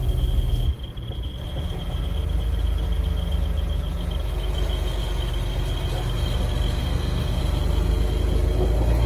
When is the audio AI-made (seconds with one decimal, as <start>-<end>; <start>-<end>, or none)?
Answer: 6.8-7.4